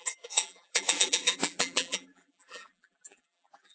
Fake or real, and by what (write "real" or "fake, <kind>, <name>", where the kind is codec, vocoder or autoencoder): fake, vocoder, BigVGAN v2